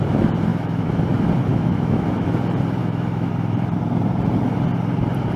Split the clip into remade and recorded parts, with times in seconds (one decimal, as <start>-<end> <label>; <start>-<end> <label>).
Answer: 0.0-0.5 recorded; 0.5-1.0 remade; 1.0-1.5 recorded; 1.5-2.3 remade; 2.3-2.8 recorded; 2.8-3.3 remade; 3.3-5.4 recorded